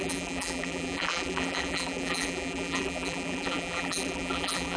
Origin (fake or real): fake